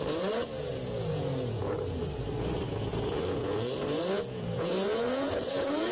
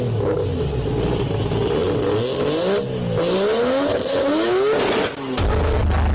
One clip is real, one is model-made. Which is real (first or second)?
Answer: second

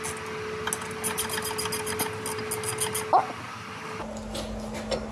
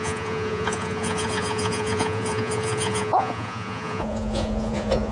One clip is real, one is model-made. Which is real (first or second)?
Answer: first